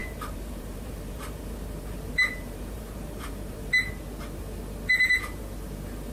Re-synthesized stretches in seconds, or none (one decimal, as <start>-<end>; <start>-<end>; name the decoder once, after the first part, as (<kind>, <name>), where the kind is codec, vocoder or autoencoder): 0.0-3.7 (vocoder, BigVGAN v2); 4.9-5.4